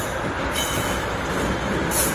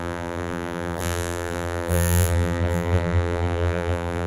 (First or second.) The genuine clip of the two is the first